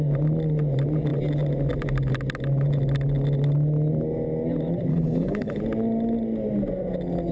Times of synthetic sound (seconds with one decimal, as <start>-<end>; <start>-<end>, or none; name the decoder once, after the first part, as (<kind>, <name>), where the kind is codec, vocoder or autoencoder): 4.9-5.6 (codec, HILCodec)